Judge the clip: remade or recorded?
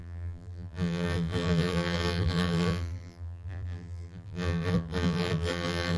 remade